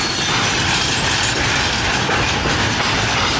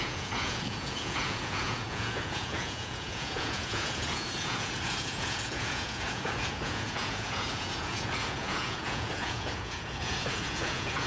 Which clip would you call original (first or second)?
first